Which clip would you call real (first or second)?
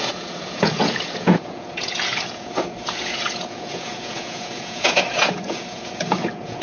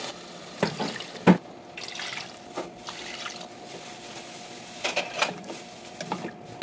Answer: second